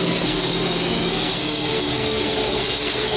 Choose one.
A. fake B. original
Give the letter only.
A